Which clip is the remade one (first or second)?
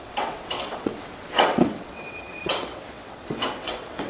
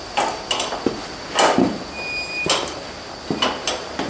first